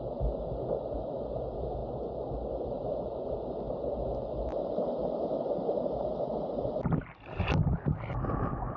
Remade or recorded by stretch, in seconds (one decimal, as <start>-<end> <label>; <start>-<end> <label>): 0.0-8.8 recorded